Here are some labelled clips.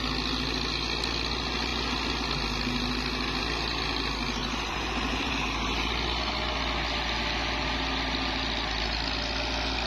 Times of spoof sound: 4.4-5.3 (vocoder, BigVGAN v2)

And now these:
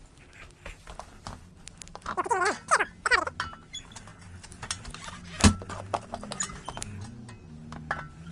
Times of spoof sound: none

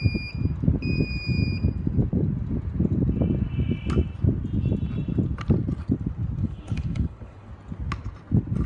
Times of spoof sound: 6.4-7.5 (codec, HILCodec)

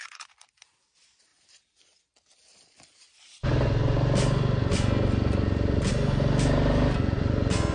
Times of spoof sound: none

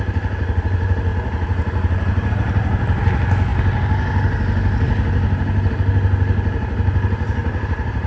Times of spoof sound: 7.4-8.1 (vocoder, BigVGAN v2)

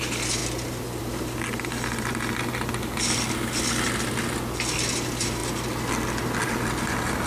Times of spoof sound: none

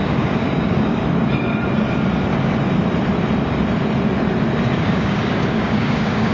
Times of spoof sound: 0.0-1.0 (codec, DAC); 4.8-6.3